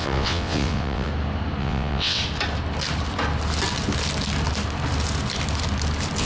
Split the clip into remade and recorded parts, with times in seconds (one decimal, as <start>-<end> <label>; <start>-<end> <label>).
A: 0.0-1.1 remade; 1.1-1.6 recorded; 1.6-2.2 remade; 2.2-6.2 recorded